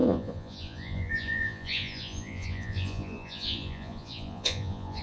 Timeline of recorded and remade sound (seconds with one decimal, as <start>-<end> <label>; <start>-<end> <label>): 0.0-5.0 remade